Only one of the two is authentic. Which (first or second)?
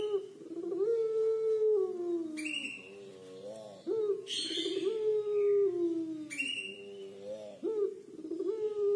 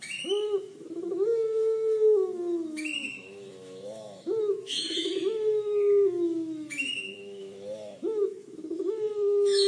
first